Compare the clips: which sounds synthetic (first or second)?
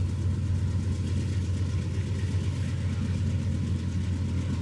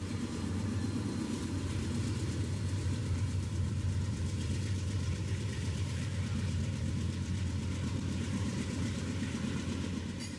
second